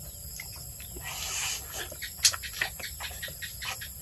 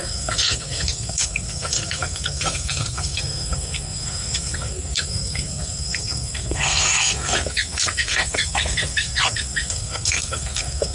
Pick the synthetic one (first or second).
second